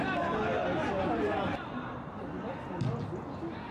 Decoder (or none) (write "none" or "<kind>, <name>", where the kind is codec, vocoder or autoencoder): none